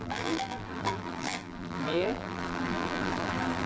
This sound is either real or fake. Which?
fake